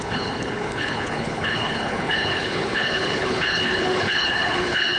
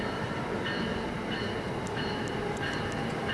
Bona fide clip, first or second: second